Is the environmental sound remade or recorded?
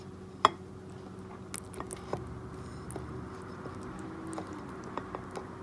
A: recorded